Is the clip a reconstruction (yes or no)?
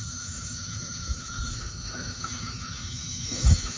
yes